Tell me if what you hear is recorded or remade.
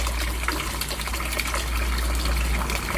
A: recorded